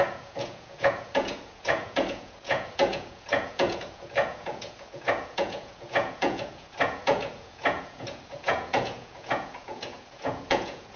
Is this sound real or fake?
fake